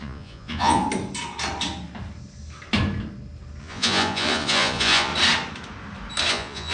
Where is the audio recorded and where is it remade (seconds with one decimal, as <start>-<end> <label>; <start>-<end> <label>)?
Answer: 0.0-0.8 remade; 0.8-3.6 recorded; 3.6-5.1 remade; 5.1-6.3 recorded; 6.3-6.7 remade